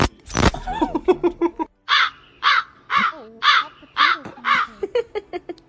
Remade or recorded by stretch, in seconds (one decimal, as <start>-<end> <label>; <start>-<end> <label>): 0.0-5.7 recorded